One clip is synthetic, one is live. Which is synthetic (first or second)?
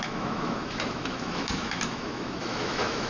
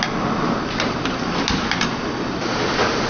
first